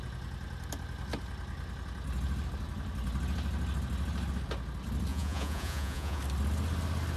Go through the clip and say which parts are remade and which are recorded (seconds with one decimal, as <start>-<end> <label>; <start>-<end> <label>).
0.0-5.1 recorded; 5.1-6.2 remade; 6.2-7.2 recorded